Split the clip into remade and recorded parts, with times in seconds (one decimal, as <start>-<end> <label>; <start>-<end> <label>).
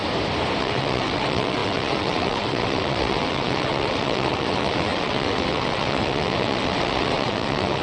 0.0-0.6 recorded; 0.6-7.8 remade